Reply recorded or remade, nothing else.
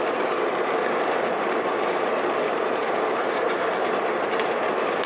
remade